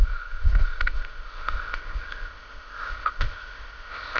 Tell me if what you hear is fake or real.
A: fake